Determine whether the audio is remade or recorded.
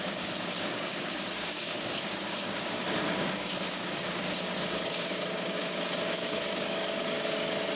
remade